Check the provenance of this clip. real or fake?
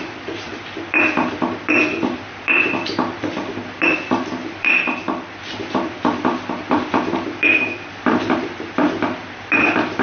fake